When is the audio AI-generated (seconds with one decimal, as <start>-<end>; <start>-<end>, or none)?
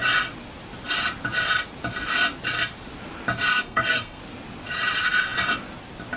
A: 3.5-4.2